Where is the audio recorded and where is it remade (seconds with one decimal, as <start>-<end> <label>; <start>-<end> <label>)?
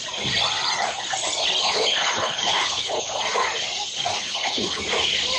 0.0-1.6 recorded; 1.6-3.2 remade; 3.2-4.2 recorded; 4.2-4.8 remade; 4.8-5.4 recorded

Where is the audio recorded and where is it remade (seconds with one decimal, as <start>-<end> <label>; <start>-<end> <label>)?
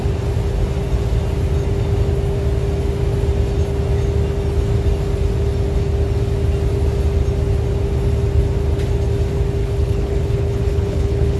0.0-9.6 recorded; 9.6-11.4 remade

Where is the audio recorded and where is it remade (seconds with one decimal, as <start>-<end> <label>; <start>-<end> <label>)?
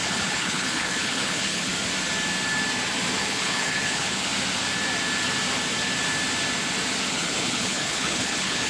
0.0-1.7 remade; 1.7-3.2 recorded; 3.2-4.3 remade; 4.3-7.1 recorded; 7.1-8.7 remade